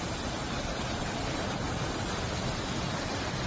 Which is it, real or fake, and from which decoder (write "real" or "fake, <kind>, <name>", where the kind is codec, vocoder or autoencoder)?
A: real